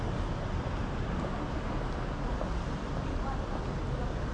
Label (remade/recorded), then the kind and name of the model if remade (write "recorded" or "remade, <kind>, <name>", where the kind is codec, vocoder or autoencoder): recorded